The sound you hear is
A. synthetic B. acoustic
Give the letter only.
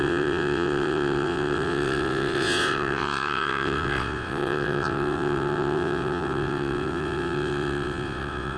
A